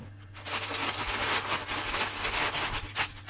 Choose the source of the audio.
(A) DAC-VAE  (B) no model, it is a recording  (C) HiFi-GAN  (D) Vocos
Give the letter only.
B